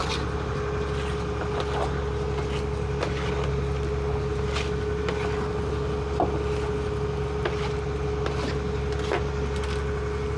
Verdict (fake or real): real